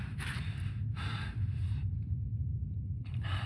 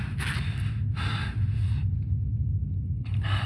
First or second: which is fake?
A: first